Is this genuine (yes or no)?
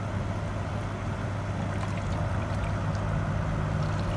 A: yes